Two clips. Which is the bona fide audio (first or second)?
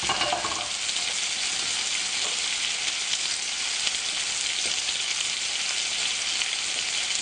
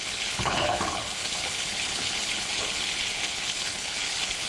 first